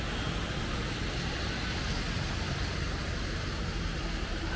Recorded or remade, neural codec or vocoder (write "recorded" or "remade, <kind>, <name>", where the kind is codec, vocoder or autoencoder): recorded